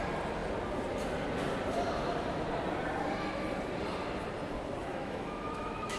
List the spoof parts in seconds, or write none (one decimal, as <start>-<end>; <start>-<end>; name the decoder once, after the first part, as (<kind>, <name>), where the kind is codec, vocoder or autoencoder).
4.8-6.0 (autoencoder, DAC-VAE)